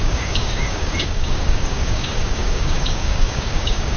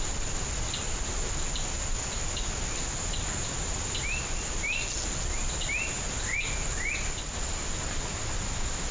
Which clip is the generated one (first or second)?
first